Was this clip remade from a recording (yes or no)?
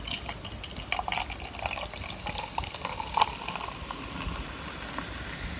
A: no